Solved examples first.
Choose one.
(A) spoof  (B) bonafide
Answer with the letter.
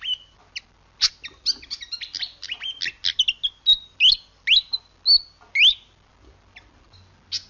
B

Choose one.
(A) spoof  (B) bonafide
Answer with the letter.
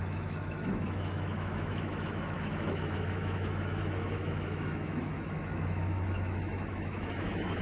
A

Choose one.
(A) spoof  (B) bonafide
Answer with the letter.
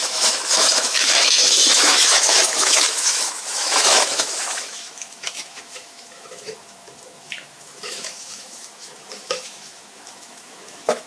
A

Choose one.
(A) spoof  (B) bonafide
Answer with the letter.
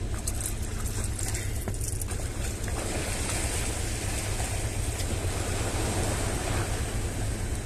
B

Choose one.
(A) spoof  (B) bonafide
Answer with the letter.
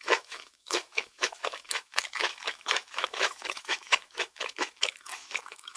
A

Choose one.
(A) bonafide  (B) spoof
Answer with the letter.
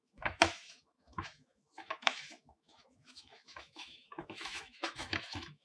B